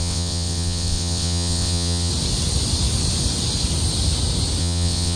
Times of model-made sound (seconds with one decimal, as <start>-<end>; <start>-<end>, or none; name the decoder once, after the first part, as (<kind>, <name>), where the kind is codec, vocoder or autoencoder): 0.0-2.1 (vocoder, WaveNeXt); 4.6-5.2